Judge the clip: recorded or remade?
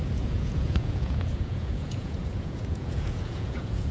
remade